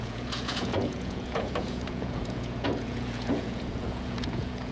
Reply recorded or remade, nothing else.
remade